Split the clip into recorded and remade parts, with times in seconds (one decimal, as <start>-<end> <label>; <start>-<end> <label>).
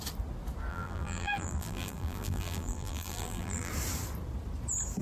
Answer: 0.0-0.7 recorded; 0.7-3.7 remade; 3.7-5.0 recorded